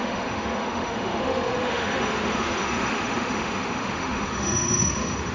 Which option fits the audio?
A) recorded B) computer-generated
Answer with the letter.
B